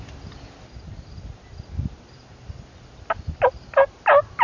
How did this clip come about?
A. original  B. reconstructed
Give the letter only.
A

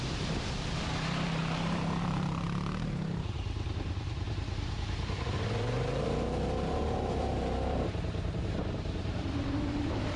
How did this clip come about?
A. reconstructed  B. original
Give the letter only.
A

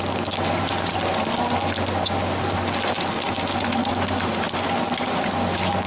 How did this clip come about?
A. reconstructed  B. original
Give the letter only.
B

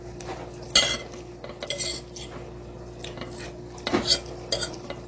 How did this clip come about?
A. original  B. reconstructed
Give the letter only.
A